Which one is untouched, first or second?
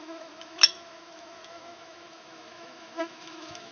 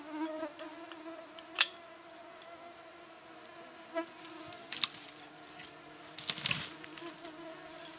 second